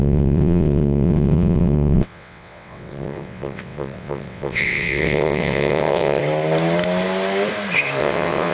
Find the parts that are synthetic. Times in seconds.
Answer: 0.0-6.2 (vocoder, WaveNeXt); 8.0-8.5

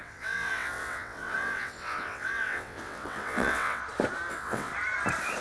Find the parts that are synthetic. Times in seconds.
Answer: 0.0-3.8 (vocoder, WaveNeXt); 4.3-4.7